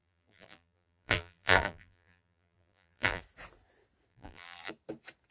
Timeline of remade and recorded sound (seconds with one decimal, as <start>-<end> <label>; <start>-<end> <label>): 0.0-3.2 remade; 3.2-4.1 recorded; 4.1-4.7 remade; 4.7-5.3 recorded